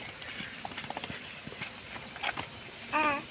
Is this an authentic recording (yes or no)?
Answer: yes